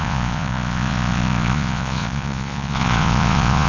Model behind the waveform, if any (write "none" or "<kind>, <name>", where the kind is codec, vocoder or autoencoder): vocoder, Vocos